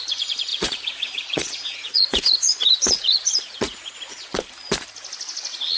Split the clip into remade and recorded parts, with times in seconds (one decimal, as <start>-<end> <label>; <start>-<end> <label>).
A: 0.0-0.5 recorded; 0.5-4.0 remade; 4.0-5.8 recorded

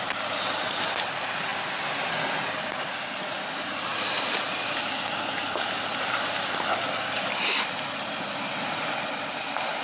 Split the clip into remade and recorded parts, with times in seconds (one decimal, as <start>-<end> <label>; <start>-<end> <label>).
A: 0.0-9.8 recorded

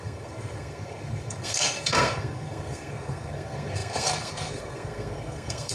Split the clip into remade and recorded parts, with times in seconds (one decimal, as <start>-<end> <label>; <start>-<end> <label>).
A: 0.0-5.7 remade

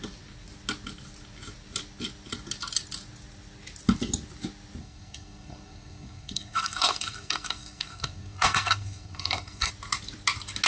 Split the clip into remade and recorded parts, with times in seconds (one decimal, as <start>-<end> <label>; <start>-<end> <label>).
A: 0.0-4.8 recorded; 4.8-9.7 remade; 9.7-10.7 recorded

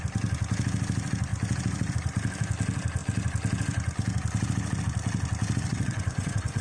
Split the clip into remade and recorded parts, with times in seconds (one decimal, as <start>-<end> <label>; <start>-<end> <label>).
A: 0.0-5.7 recorded; 5.7-6.6 remade